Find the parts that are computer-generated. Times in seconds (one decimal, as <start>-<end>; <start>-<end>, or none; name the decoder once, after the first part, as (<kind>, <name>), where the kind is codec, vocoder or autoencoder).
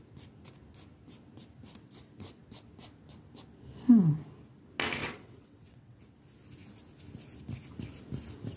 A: 5.0-6.0 (vocoder, WaveNeXt)